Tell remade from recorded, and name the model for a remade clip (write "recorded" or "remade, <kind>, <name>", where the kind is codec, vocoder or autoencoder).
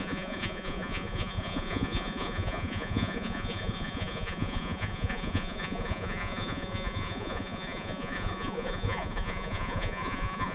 remade, vocoder, Vocos